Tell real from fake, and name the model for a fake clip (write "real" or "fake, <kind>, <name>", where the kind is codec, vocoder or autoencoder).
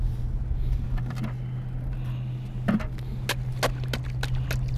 real